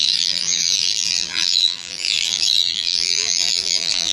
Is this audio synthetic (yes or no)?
yes